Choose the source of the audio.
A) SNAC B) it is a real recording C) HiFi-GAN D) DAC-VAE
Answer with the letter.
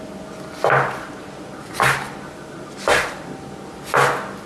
B